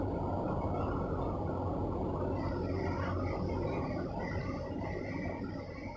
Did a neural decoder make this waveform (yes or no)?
no